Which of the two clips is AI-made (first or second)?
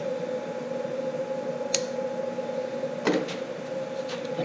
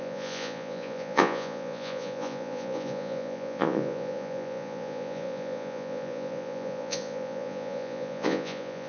second